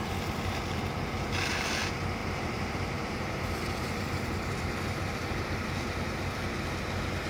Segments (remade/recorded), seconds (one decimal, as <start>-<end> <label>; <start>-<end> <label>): 0.0-2.2 recorded; 2.2-4.0 remade; 4.0-7.3 recorded